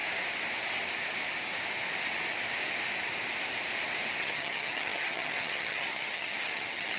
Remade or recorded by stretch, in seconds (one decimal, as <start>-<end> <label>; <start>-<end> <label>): 0.0-4.2 recorded; 4.2-7.0 remade